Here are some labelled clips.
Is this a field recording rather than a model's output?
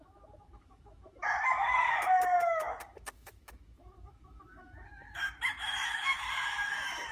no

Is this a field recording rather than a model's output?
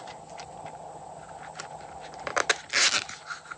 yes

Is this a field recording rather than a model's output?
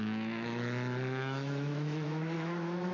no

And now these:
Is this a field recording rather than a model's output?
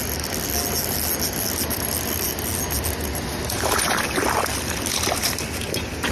yes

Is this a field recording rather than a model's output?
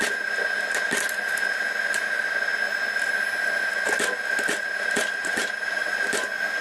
yes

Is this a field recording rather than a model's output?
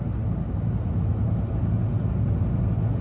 yes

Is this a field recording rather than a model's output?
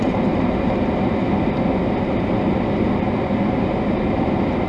yes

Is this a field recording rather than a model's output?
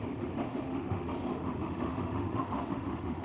no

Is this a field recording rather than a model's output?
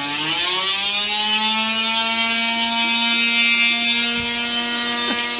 yes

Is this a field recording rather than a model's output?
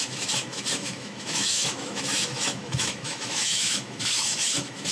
no